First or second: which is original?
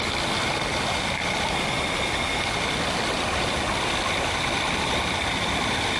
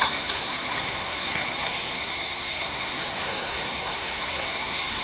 first